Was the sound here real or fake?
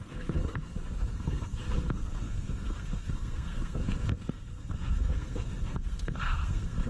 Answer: fake